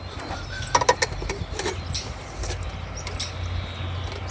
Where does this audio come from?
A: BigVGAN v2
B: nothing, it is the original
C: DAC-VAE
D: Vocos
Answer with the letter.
B